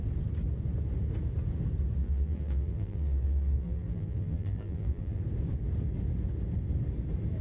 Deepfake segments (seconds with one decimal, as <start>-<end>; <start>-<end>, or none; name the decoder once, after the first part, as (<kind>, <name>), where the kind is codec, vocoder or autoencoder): 2.0-5.2 (vocoder, BigVGAN v2)